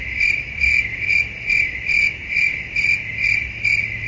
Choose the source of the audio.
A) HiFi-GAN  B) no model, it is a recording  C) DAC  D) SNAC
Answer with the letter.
B